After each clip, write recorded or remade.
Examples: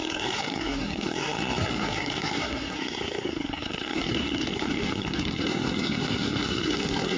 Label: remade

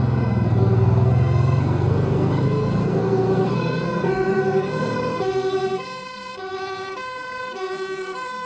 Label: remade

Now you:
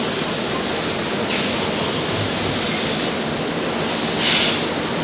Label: recorded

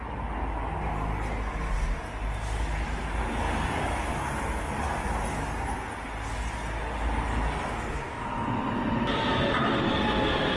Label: recorded